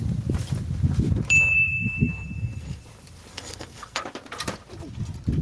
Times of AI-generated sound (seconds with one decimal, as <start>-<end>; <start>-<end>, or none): 1.5-2.8; 3.3-4.0